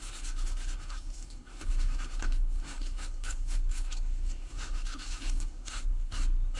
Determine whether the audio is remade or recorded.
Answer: remade